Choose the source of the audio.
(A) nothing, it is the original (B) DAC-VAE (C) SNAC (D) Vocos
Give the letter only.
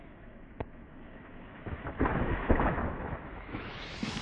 B